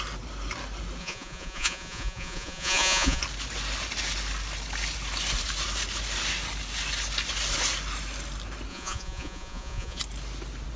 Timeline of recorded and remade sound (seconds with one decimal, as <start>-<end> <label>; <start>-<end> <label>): 0.0-1.0 recorded; 1.0-3.2 remade; 3.2-8.7 recorded; 8.7-10.0 remade; 10.0-10.8 recorded